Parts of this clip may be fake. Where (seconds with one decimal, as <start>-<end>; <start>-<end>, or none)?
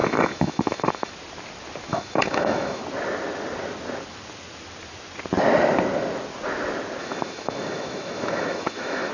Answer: 0.0-1.1; 1.9-2.8; 7.0-9.1